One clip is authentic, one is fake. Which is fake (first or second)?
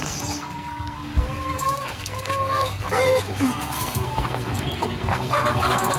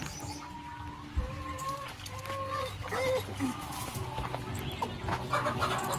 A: first